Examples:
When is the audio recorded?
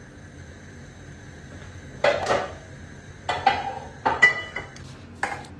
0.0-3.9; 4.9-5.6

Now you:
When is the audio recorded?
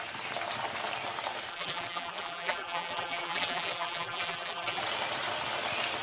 0.0-1.5; 4.8-6.0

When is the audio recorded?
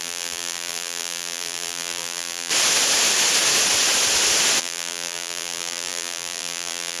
2.5-4.6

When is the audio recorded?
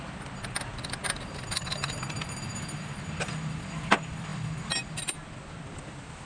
0.0-6.3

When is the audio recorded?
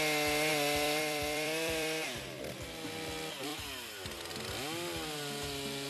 0.0-0.5; 2.4-5.9